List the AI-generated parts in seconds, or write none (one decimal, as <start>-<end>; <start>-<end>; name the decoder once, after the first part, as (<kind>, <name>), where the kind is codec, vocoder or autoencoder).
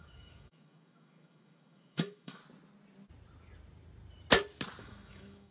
0.0-2.4 (autoencoder, DAC-VAE); 4.8-5.5